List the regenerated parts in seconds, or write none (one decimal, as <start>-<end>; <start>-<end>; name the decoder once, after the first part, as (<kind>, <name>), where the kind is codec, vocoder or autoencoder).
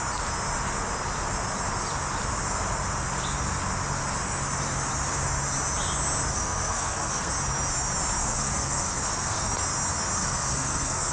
6.3-7.3 (codec, SNAC); 8.2-9.5; 10.2-11.1